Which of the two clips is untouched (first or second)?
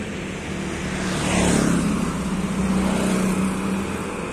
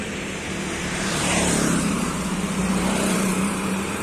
first